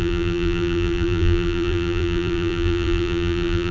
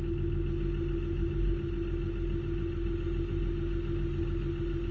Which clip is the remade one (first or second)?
first